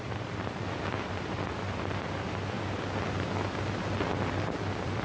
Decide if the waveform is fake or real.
fake